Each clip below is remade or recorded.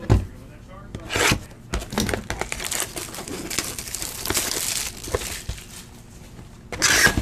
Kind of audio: recorded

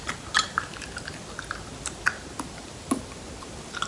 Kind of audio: remade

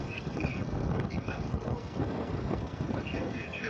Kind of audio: remade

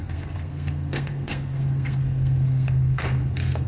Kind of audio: remade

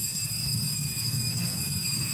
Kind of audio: remade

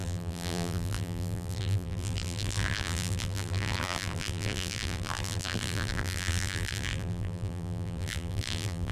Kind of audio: remade